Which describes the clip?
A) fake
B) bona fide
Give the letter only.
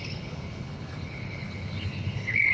A